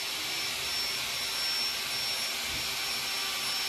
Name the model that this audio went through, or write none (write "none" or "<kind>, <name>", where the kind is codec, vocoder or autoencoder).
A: none